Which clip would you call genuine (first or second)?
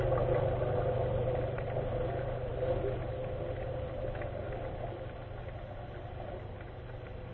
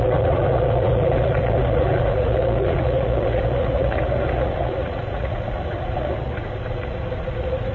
first